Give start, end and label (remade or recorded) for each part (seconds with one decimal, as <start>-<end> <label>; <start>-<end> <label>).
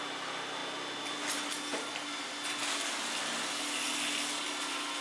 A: 0.0-5.0 recorded